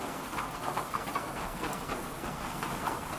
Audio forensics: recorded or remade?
remade